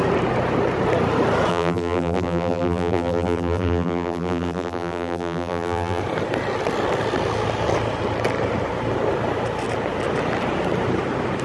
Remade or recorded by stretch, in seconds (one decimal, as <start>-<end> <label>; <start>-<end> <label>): 0.0-1.5 recorded; 1.5-6.0 remade; 6.0-11.4 recorded